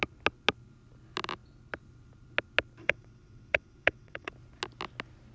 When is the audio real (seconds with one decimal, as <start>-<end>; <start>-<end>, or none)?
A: 0.0-2.8; 4.3-5.3

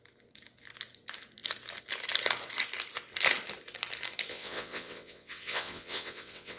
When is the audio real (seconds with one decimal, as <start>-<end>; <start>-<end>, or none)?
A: 0.0-4.3

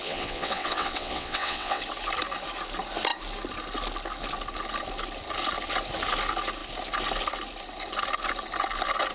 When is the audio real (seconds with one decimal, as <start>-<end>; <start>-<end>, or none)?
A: 1.8-9.1

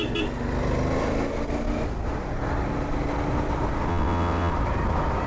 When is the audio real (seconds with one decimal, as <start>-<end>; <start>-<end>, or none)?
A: 0.0-3.9; 4.5-5.3

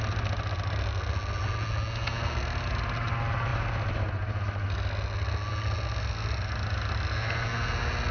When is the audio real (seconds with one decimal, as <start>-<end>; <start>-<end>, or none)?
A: 0.0-8.1

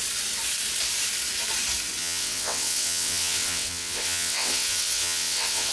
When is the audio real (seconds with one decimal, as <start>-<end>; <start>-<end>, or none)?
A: 0.0-2.0

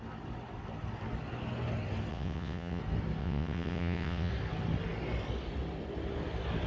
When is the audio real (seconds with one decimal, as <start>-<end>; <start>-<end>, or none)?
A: 0.0-2.1; 2.8-3.2; 4.3-6.7